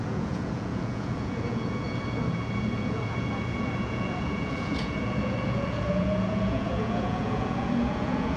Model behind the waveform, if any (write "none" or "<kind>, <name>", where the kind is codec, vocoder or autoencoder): vocoder, Vocos